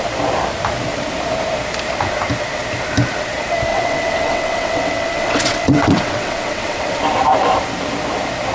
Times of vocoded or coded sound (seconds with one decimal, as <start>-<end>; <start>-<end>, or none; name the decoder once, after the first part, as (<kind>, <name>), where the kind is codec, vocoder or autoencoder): 3.7-7.0 (vocoder, WaveNeXt)